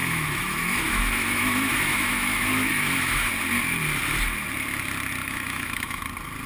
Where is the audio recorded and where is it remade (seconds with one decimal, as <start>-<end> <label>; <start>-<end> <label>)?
0.0-3.3 remade; 3.3-5.2 recorded; 5.2-6.0 remade; 6.0-6.5 recorded